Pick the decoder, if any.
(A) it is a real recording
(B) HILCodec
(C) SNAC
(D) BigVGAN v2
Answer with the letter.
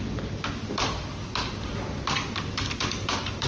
D